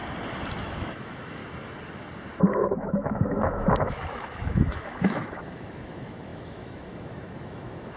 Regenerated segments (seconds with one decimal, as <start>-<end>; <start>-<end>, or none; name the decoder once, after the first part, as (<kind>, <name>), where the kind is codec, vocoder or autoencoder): 0.6-1.4 (autoencoder, DAC-VAE); 2.8-8.0